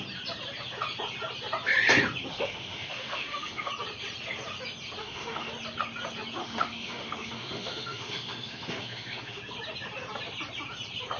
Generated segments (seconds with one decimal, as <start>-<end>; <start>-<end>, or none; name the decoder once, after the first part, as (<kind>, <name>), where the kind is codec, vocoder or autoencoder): 2.3-3.7 (autoencoder, DAC-VAE); 5.0-5.5; 6.4-9.4